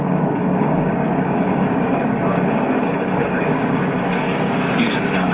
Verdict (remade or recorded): remade